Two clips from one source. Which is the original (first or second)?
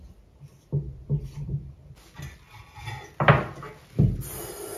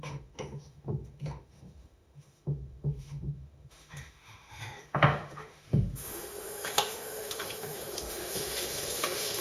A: first